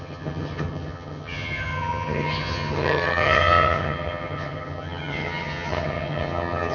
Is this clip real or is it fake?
fake